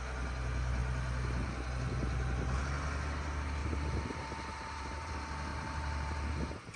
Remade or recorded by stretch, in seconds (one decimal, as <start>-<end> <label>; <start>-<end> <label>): 0.0-3.6 recorded; 3.6-5.1 remade; 5.1-5.5 recorded; 5.5-6.8 remade